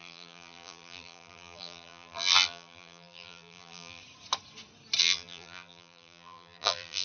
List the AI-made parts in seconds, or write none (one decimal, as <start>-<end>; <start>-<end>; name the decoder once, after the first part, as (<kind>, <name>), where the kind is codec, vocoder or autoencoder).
0.0-4.0 (vocoder, BigVGAN v2); 5.0-7.0